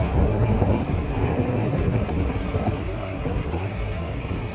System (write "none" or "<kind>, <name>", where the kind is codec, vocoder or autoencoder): codec, SNAC